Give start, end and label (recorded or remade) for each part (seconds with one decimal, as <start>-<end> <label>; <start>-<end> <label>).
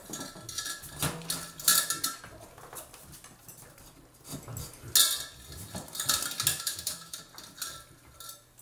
0.0-6.5 recorded; 6.5-7.2 remade; 7.2-8.6 recorded